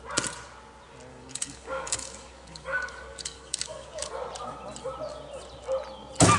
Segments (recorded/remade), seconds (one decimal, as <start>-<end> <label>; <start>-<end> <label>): 0.0-1.1 recorded; 1.1-4.1 remade; 4.1-6.4 recorded